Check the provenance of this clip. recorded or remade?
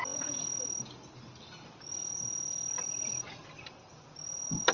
recorded